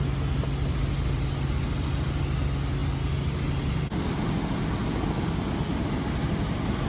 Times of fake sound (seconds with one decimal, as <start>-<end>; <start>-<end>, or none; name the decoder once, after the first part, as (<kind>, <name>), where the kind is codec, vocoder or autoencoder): none